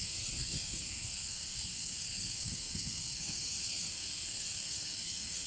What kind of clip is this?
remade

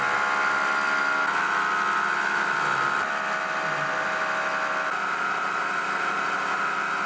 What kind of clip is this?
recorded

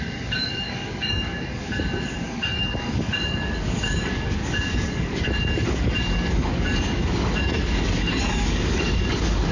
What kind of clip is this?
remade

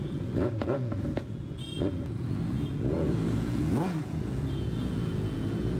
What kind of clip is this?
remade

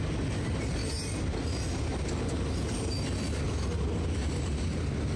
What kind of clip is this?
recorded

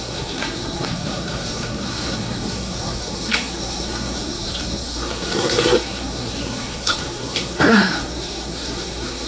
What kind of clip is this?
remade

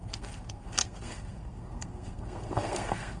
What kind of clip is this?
remade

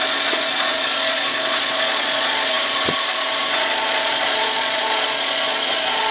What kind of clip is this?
remade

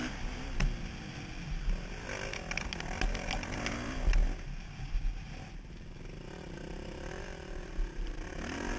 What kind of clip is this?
recorded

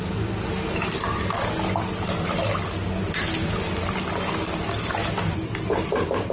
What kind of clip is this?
recorded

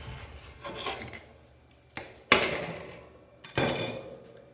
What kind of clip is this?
recorded